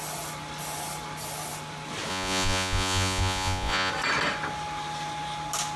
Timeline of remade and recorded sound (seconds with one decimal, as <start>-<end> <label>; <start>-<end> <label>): 0.0-2.1 recorded; 2.1-3.9 remade; 3.9-5.8 recorded